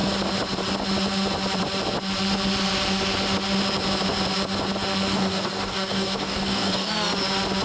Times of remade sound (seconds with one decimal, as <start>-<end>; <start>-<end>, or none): 5.1-6.9